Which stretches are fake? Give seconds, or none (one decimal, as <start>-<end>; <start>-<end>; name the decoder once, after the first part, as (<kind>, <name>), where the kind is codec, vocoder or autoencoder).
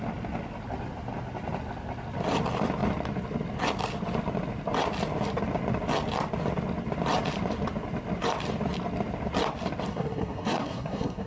9.9-11.3 (codec, SNAC)